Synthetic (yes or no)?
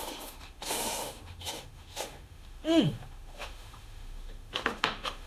yes